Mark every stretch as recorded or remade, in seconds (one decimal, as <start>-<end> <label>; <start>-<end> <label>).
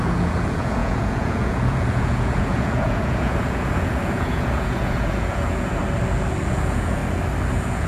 0.0-5.8 remade; 5.8-6.5 recorded; 6.5-7.0 remade; 7.0-7.5 recorded; 7.5-7.9 remade